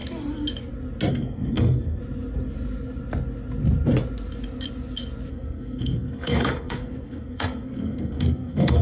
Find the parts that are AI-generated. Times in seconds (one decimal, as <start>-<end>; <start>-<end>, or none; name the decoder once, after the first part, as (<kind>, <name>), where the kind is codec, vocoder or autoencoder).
1.1-2.0 (codec, SNAC); 5.3-8.8